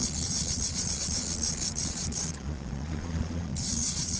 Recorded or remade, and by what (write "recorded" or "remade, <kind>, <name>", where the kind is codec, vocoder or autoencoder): remade, vocoder, Vocos